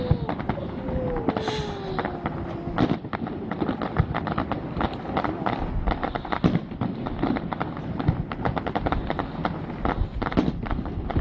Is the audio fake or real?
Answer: real